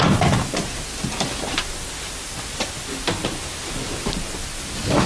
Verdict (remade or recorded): recorded